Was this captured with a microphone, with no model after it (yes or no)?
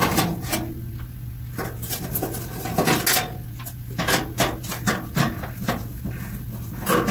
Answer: yes